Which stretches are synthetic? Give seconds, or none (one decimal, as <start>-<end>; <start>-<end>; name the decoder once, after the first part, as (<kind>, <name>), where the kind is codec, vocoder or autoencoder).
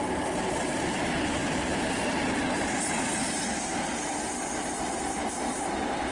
none